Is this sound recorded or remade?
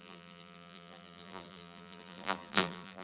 remade